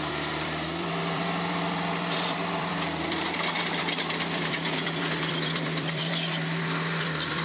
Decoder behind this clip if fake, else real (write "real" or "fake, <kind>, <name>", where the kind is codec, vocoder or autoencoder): fake, vocoder, BigVGAN v2